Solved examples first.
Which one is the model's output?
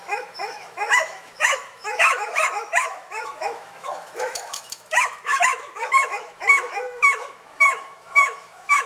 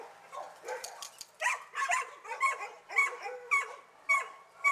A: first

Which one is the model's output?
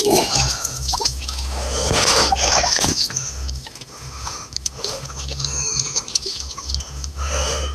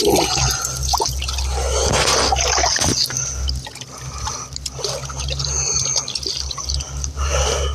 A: first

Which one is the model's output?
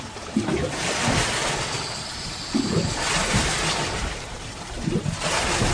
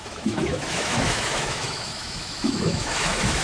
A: second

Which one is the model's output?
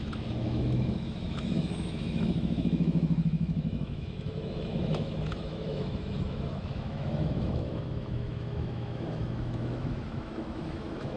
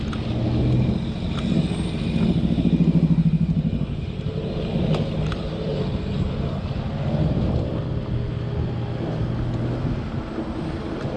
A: first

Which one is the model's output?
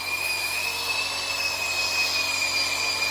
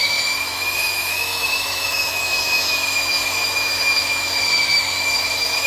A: second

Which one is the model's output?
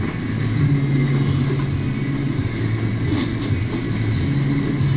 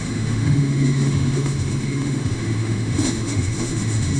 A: second